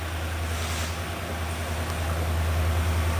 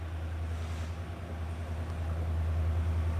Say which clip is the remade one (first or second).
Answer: second